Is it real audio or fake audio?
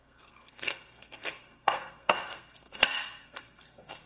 fake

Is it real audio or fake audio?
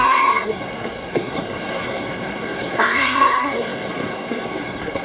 fake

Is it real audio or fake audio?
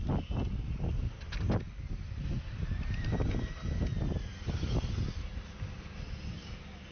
real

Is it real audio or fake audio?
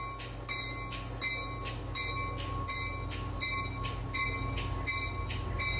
real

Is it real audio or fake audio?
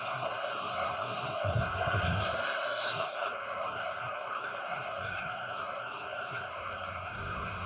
fake